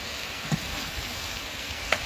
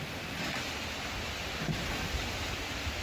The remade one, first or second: first